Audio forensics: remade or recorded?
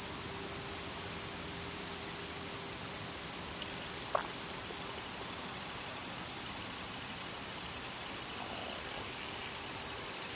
recorded